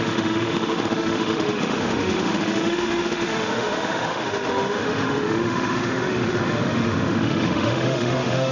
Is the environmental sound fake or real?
fake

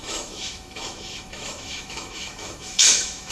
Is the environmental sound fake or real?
fake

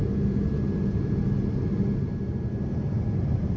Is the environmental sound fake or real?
real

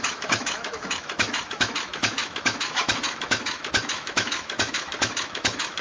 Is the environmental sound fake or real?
fake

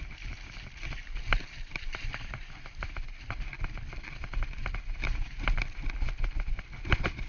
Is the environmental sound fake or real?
real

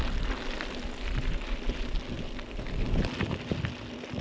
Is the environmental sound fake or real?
real